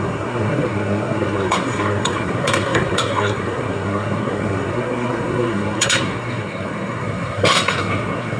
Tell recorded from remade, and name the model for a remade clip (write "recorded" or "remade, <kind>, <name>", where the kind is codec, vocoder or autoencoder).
remade, codec, SNAC